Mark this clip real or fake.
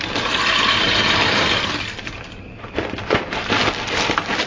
real